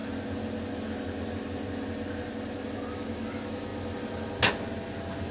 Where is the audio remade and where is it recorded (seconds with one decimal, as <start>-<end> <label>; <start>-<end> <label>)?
0.0-5.3 recorded